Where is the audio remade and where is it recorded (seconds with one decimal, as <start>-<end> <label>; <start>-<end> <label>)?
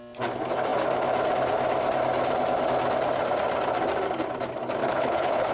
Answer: 0.0-4.8 recorded; 4.8-5.5 remade